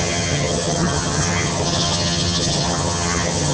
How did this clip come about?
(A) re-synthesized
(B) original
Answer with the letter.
A